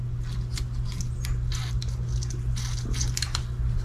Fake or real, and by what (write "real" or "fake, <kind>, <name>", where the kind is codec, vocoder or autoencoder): real